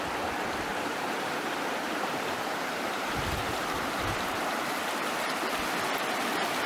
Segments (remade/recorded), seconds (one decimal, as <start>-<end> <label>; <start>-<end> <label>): 0.0-0.7 recorded; 0.7-4.5 remade; 4.5-6.7 recorded